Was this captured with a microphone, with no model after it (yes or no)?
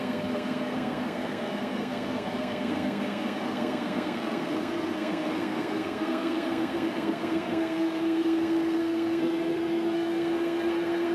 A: no